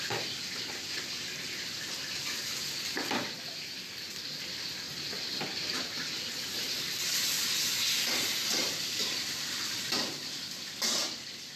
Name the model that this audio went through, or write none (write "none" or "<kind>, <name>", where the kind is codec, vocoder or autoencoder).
none